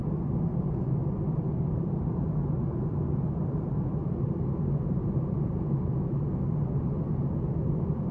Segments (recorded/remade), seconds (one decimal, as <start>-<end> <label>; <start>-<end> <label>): 0.0-1.0 recorded; 1.0-2.3 remade; 2.3-4.0 recorded; 4.0-5.6 remade; 5.6-8.1 recorded